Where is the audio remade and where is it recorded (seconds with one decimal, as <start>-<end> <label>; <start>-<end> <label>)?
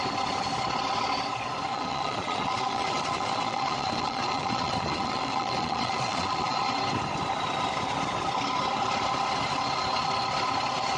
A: 0.0-1.7 recorded; 1.7-6.7 remade; 6.7-11.0 recorded